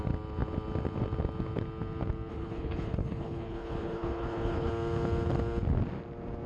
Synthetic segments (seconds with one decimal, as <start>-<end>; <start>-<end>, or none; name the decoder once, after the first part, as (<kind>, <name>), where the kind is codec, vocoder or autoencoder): 2.3-4.7 (codec, HILCodec)